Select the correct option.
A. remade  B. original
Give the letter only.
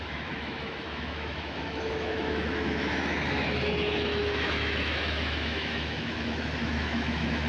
A